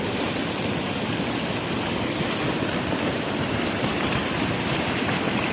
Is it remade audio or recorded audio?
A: recorded